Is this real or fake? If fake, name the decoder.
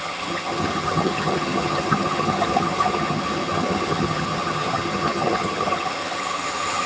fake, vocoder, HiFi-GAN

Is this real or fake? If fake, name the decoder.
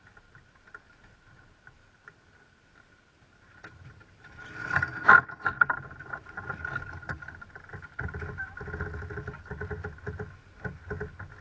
real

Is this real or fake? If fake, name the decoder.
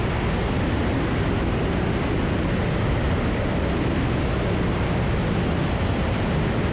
real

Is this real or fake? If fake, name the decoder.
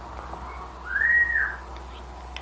real